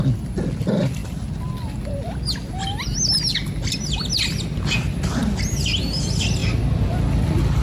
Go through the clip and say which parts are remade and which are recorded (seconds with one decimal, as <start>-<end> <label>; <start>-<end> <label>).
0.0-7.6 recorded